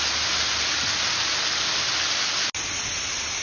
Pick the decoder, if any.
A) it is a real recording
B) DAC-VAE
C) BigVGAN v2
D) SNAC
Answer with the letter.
A